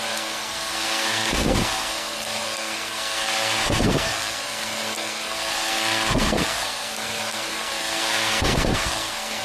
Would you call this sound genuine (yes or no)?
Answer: no